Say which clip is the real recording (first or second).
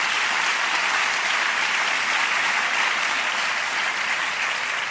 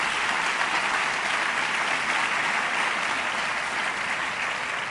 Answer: second